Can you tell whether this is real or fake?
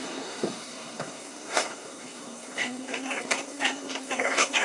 fake